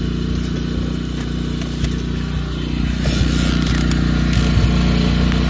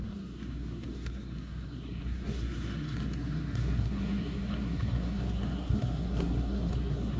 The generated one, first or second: second